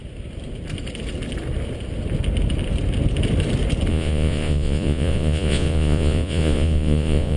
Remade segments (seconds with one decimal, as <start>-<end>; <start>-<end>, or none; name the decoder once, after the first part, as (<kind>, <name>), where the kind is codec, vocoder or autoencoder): 3.9-7.4 (vocoder, Vocos)